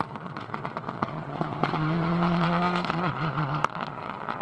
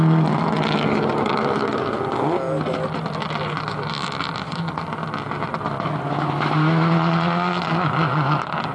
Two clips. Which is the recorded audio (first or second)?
second